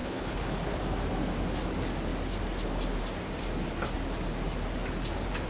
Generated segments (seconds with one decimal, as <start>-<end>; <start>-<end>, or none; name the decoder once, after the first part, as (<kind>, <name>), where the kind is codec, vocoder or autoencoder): 0.0-0.8 (codec, HILCodec)